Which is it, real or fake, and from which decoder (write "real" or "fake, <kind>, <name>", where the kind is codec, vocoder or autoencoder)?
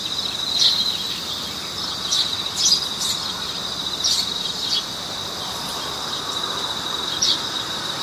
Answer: real